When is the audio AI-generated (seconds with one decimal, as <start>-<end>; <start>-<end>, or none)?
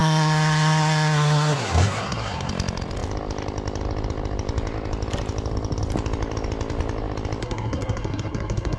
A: 0.0-2.5; 7.4-8.8